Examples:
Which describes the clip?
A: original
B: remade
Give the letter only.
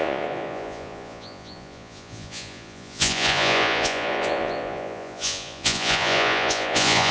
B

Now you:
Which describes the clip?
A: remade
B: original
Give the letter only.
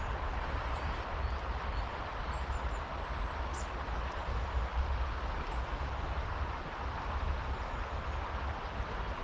B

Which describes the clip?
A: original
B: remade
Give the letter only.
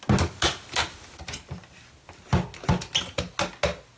A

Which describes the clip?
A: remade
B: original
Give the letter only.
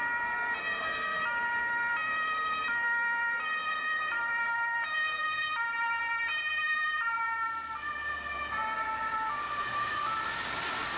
B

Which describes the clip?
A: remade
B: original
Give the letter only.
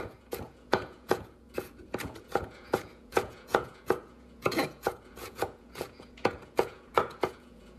A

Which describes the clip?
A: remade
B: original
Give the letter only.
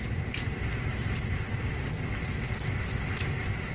B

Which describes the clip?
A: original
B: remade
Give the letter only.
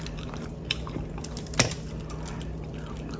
A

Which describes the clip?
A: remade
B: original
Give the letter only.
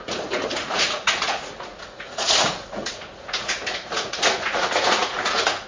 A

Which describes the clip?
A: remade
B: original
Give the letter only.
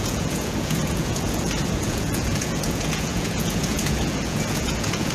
A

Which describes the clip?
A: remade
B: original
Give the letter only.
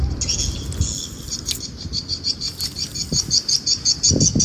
B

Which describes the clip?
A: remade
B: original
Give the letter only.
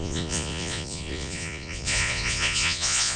A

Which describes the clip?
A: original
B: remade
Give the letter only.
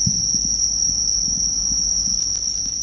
A